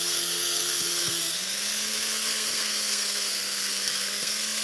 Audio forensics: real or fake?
fake